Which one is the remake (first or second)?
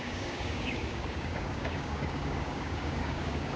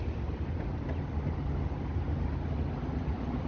first